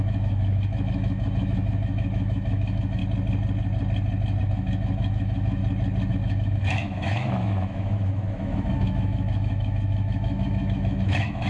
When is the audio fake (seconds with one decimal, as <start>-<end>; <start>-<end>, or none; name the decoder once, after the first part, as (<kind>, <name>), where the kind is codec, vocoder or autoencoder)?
0.0-3.0 (autoencoder, DAC-VAE); 4.4-5.6; 6.1-11.5